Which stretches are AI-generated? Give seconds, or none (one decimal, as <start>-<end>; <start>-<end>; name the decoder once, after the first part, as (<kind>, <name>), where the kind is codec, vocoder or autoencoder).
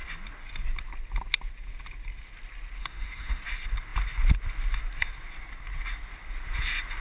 2.8-3.4 (autoencoder, DAC-VAE)